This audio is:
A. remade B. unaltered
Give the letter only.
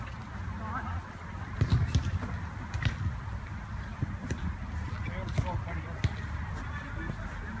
B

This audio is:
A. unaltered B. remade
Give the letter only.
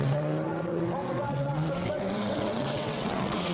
B